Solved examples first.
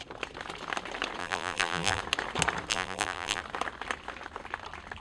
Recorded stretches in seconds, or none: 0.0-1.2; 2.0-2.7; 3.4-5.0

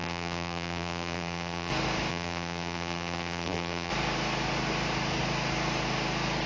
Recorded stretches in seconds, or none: 1.7-2.1; 3.9-6.5

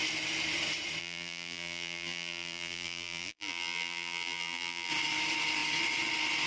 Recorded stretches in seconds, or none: 0.0-1.0; 4.9-6.5

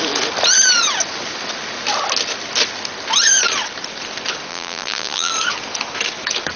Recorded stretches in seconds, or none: 0.0-4.5; 5.3-6.6

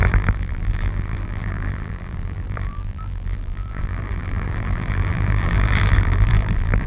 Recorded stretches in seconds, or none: none

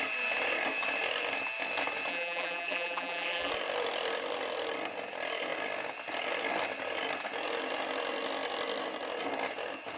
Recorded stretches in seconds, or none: 0.0-2.1; 3.5-10.0

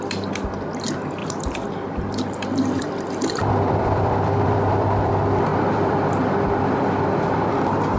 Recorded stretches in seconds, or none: 0.0-1.2; 5.1-5.5; 7.5-8.0

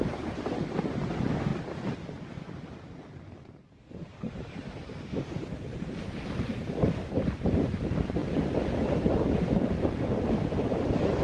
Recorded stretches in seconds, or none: 1.5-3.9; 8.2-9.6